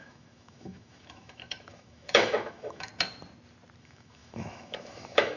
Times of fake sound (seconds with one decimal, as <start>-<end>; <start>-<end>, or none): 0.0-2.9; 3.8-5.4